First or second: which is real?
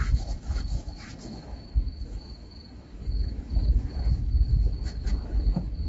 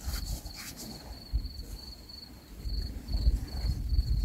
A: second